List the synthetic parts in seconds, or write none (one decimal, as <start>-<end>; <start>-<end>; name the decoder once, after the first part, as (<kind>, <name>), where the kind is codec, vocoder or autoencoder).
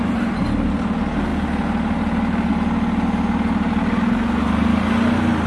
none